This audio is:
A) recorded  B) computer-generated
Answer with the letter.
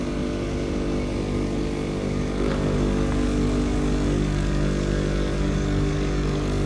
B